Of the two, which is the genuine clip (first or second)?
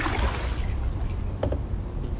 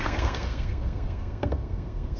first